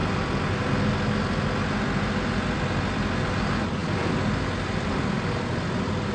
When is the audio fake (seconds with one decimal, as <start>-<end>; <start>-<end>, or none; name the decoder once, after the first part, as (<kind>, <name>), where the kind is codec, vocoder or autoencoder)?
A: none